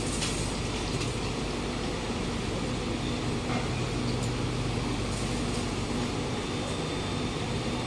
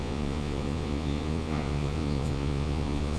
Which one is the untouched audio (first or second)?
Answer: first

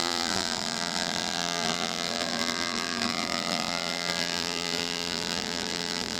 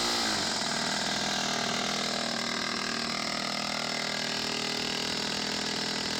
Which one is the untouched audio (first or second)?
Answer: second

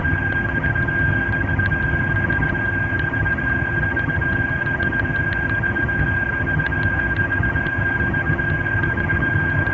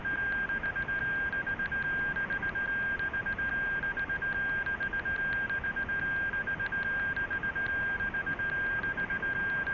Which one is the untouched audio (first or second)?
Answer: second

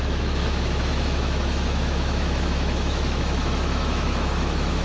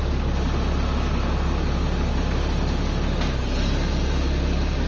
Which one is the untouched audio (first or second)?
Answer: second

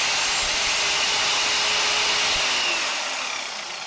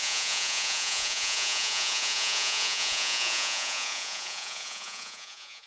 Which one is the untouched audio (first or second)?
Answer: first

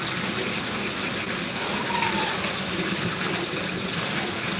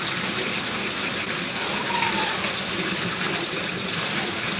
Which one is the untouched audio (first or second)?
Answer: first